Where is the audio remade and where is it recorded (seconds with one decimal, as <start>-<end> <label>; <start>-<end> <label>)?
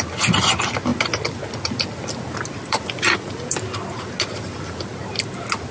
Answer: 0.0-5.7 recorded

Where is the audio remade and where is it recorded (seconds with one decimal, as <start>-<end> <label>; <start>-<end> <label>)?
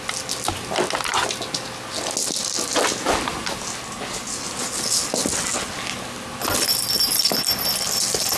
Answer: 0.0-8.4 recorded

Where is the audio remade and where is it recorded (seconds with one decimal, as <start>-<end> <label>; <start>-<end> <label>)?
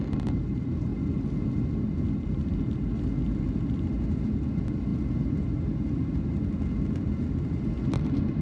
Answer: 0.0-8.4 recorded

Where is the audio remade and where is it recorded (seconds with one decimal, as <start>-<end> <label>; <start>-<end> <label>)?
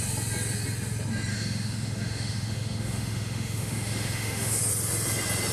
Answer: 0.0-1.3 recorded; 1.3-4.6 remade; 4.6-5.5 recorded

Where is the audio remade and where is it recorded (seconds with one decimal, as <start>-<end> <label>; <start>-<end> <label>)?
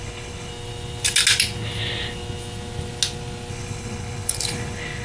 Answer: 0.0-0.5 remade; 0.5-3.5 recorded; 3.5-5.0 remade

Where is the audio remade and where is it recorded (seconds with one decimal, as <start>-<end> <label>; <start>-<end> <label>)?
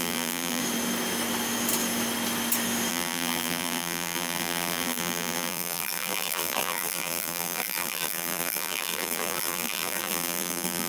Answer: 0.0-0.6 remade; 0.6-2.9 recorded; 2.9-10.9 remade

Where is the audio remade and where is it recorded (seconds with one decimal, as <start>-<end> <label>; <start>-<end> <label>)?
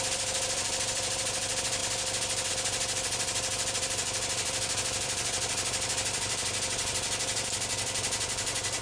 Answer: 0.0-1.8 remade; 1.8-2.5 recorded; 2.5-8.8 remade